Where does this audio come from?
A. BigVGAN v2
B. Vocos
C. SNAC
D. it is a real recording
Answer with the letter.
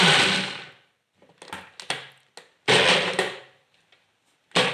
D